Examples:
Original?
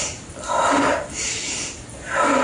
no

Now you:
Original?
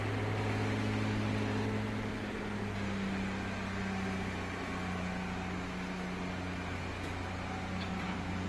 yes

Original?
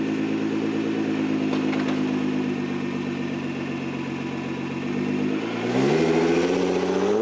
yes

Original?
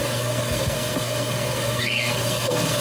no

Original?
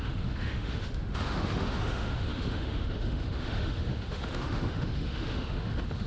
no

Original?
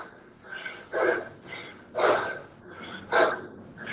yes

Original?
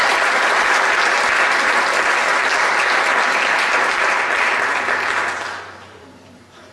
no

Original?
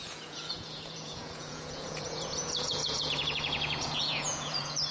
no